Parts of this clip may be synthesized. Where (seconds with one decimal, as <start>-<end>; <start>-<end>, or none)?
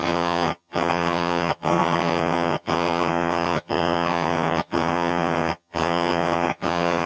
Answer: 0.0-7.1